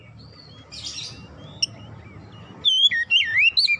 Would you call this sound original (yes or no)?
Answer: yes